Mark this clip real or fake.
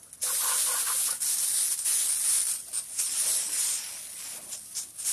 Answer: real